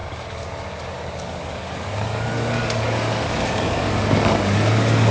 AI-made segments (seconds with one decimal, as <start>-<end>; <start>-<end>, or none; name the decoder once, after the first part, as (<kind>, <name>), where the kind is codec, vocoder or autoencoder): 0.0-5.1 (codec, DAC)